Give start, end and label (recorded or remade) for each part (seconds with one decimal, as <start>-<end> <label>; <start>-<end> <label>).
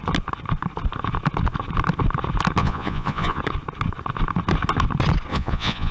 0.0-2.6 recorded; 2.6-3.4 remade; 3.4-5.3 recorded; 5.3-5.9 remade